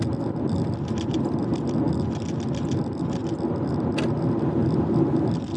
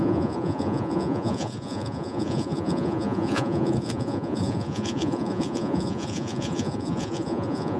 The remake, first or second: second